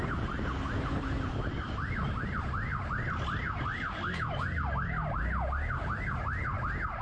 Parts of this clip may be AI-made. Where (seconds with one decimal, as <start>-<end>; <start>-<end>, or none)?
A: none